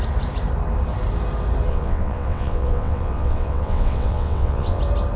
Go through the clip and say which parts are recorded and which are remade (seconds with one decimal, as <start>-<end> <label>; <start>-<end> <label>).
0.0-1.7 recorded; 1.7-4.8 remade; 4.8-5.2 recorded

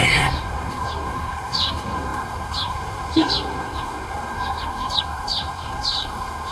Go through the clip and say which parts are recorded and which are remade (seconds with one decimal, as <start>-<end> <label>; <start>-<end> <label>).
0.0-6.5 remade

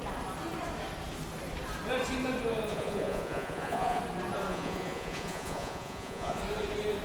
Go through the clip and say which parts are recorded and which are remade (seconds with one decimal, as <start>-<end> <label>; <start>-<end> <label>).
0.0-2.7 recorded; 2.7-4.0 remade; 4.0-4.5 recorded; 4.5-6.4 remade; 6.4-7.0 recorded

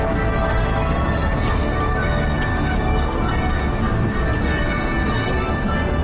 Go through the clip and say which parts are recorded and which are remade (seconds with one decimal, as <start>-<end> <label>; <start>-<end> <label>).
0.0-2.5 recorded; 2.5-3.4 remade; 3.4-6.0 recorded